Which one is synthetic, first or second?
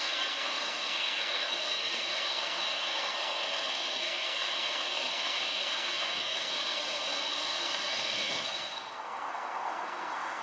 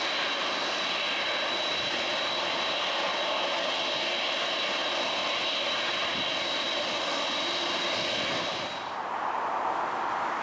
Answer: first